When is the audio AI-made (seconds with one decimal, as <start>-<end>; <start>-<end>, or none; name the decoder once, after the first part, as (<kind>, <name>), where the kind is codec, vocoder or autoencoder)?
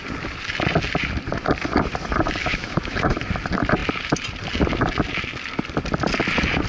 2.4-3.2 (autoencoder, DAC-VAE)